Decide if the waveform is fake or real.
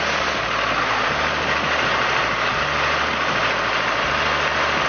real